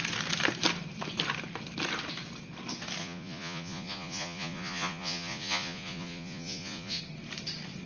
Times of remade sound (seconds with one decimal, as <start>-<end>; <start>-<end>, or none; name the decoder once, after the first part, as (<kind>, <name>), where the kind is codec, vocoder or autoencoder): 3.0-7.0 (vocoder, Vocos)